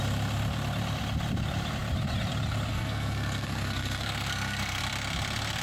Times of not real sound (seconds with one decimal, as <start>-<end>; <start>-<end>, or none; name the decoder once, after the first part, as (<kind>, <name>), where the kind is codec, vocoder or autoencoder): 2.7-4.8 (codec, SNAC)